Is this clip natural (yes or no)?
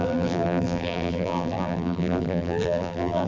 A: no